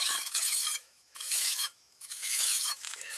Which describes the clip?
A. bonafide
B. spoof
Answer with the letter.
B